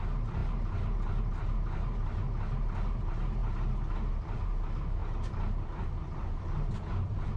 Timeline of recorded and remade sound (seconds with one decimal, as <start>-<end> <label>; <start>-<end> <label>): 0.0-7.4 recorded